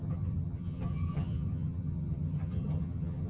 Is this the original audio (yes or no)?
no